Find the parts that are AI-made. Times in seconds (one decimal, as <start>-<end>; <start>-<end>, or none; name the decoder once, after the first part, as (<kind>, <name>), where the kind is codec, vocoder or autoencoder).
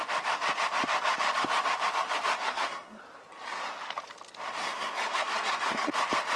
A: 2.4-3.0 (codec, SNAC); 4.6-5.9